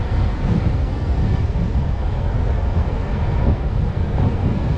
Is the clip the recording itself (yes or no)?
no